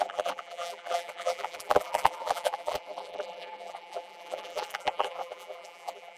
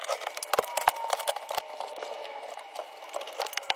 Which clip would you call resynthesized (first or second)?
first